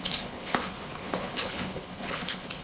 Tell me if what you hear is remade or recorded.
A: remade